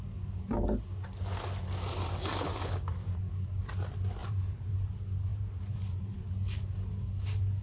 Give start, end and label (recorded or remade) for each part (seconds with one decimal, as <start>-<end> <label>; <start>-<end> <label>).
0.0-4.2 recorded; 4.2-4.7 remade; 4.7-5.3 recorded; 5.3-6.3 remade; 6.3-7.6 recorded